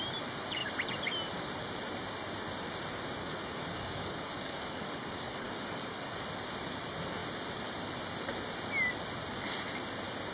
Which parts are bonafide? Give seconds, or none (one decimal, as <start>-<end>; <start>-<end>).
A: 0.0-3.2; 6.2-10.3